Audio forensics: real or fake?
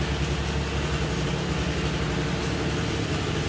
real